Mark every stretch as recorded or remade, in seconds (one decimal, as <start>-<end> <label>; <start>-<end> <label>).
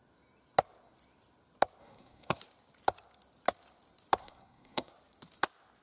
0.0-1.8 recorded; 1.8-2.4 remade; 2.4-4.2 recorded; 4.2-4.9 remade; 4.9-5.8 recorded